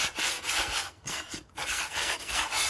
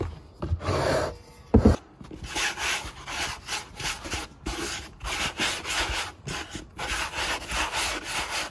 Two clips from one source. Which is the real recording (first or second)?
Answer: second